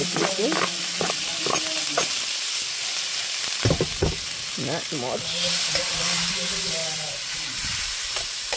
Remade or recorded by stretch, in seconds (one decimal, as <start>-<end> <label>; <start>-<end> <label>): 0.0-6.8 recorded; 6.8-8.0 remade; 8.0-8.6 recorded